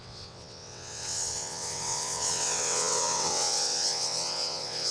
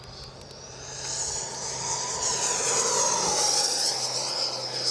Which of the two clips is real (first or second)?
second